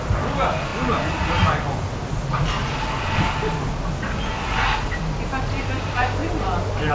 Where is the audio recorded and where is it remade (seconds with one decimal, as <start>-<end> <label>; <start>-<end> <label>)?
0.0-6.9 recorded